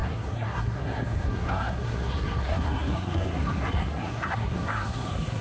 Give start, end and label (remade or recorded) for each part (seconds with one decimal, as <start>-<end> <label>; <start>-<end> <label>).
0.0-5.4 remade